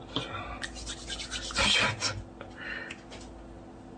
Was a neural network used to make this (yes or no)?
no